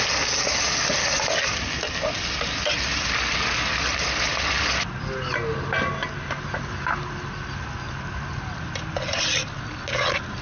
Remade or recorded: recorded